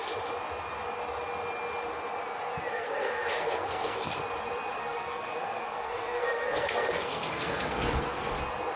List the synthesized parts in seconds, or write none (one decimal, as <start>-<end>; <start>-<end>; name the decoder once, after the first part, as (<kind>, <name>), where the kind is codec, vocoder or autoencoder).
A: 2.7-4.2 (codec, SNAC); 4.7-8.3